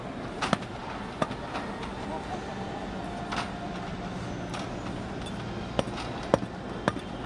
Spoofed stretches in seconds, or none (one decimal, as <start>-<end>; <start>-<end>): none

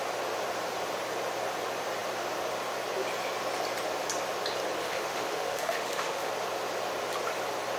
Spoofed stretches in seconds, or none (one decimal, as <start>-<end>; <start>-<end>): 4.8-6.3

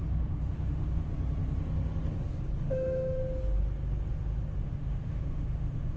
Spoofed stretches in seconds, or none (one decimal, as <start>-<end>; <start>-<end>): 0.0-1.1; 2.6-3.2; 4.6-6.0

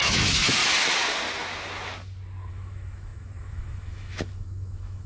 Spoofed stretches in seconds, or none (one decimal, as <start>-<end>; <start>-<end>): 0.0-0.6; 2.5-5.1

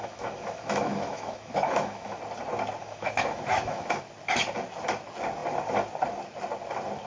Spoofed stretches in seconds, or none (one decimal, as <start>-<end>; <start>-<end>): 0.0-2.2; 2.8-4.0